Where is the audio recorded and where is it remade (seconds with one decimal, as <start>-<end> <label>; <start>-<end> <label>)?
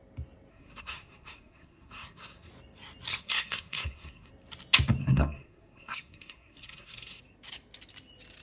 0.0-0.5 recorded; 0.5-2.5 remade; 2.5-3.1 recorded; 3.1-4.3 remade; 4.3-5.0 recorded; 5.0-7.2 remade; 7.2-8.4 recorded